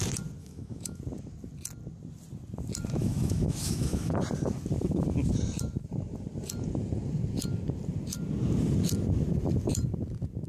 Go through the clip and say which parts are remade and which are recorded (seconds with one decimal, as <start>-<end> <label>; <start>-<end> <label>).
0.0-0.4 recorded; 0.4-1.0 remade; 1.0-3.0 recorded; 3.0-4.1 remade; 4.1-10.5 recorded